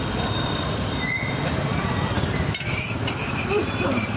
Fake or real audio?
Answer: real